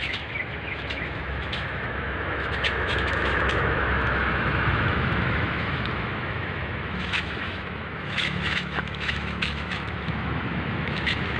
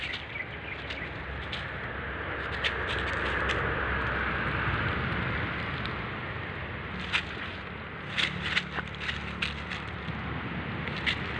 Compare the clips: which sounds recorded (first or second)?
second